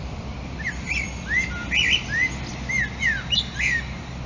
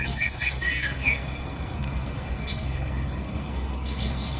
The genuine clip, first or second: first